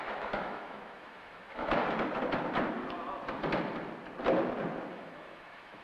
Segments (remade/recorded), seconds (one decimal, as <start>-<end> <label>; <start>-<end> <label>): 0.0-1.8 remade; 1.8-4.9 recorded; 4.9-5.8 remade